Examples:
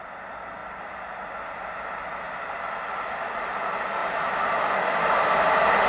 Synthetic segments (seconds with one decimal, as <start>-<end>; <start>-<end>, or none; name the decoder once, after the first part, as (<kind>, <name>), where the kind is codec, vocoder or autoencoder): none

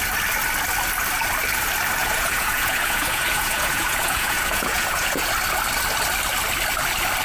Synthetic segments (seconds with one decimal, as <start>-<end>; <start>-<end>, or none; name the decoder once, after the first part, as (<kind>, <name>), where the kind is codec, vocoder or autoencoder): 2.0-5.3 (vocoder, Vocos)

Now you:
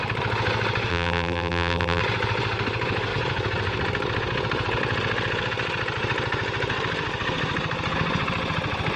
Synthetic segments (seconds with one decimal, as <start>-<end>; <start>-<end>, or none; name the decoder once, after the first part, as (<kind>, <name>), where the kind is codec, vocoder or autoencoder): 0.9-2.0 (vocoder, BigVGAN v2)

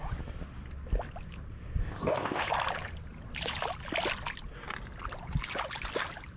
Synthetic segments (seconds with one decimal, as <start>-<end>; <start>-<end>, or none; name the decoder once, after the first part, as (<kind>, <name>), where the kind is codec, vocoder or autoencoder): 1.8-2.4 (codec, ZipCodec)

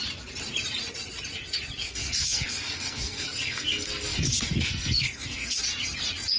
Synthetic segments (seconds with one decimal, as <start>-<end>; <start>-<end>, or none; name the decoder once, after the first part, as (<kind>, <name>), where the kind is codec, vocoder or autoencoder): 1.8-5.6 (codec, SNAC)

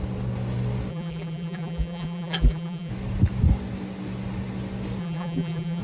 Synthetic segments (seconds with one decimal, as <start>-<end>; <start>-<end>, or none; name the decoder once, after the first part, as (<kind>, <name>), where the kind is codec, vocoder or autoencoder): 0.9-2.9 (vocoder, BigVGAN v2); 5.0-5.8